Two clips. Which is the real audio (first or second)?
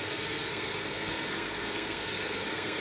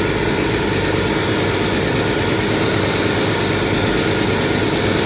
second